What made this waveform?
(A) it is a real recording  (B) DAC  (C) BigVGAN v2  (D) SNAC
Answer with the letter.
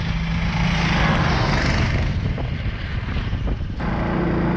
A